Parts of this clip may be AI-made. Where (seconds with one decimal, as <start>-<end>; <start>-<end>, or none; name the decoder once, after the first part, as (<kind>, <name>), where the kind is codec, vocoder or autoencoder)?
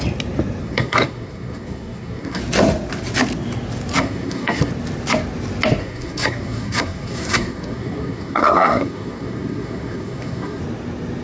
0.6-2.4 (codec, SNAC); 4.0-4.7; 5.8-10.6